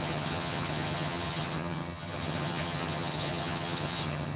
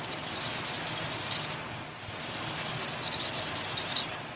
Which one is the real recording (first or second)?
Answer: second